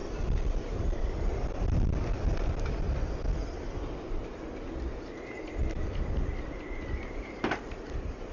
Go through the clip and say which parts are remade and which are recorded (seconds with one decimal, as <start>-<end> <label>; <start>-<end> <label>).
0.0-8.3 recorded